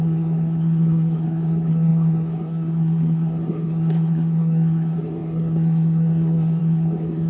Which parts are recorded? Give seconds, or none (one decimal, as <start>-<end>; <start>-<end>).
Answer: none